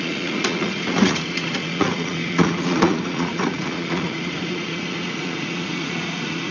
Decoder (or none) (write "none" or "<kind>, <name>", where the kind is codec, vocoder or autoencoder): vocoder, Vocos